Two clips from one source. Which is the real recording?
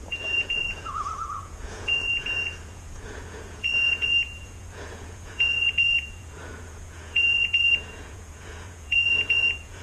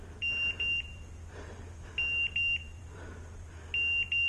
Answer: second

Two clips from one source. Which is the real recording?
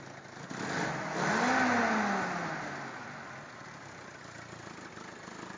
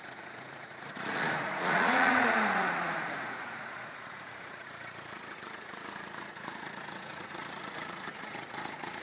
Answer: first